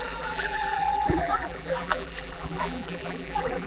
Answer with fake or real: fake